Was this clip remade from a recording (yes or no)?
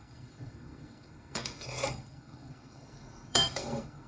yes